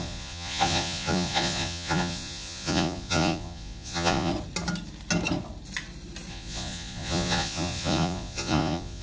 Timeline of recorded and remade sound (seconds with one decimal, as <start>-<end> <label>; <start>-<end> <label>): 0.0-4.3 remade; 4.3-6.3 recorded; 6.3-9.0 remade

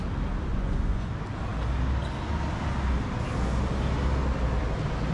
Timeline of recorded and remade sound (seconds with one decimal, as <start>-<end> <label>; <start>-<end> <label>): 0.0-0.5 recorded; 0.5-1.1 remade; 1.1-5.1 recorded

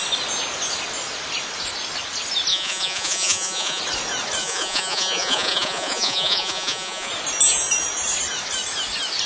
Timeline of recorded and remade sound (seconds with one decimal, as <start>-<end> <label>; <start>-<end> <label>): 0.0-2.5 recorded; 2.5-3.8 remade; 3.8-4.4 recorded; 4.4-7.1 remade; 7.1-9.3 recorded

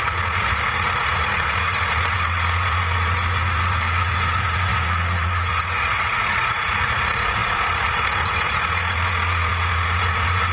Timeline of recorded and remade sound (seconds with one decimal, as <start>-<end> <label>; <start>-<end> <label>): 0.0-10.5 remade